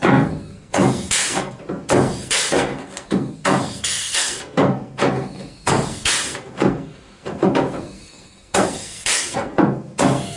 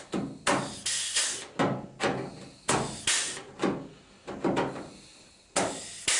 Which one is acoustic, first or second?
second